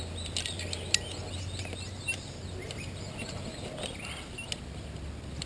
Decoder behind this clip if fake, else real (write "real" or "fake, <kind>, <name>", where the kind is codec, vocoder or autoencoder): real